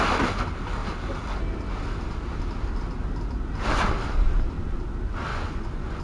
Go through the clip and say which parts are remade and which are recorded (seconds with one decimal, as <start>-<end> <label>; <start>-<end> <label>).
0.0-5.3 recorded; 5.3-6.0 remade